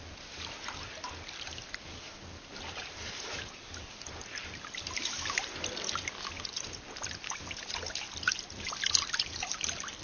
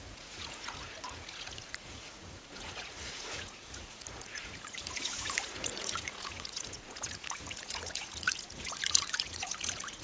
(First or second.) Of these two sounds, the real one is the first